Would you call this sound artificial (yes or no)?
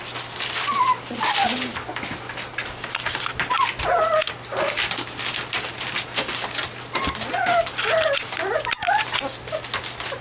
no